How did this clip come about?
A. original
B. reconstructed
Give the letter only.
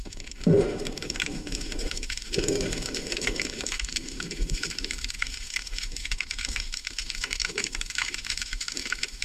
B